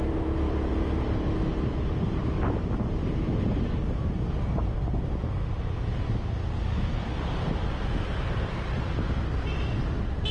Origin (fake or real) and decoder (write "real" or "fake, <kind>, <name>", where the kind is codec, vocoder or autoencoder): real